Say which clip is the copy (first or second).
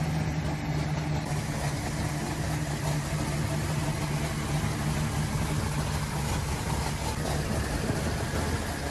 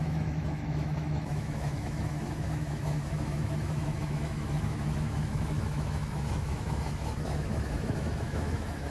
second